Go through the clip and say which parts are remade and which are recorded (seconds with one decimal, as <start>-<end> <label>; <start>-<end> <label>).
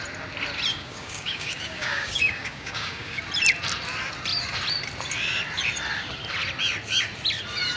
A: 0.0-0.7 recorded; 0.7-3.2 remade; 3.2-7.8 recorded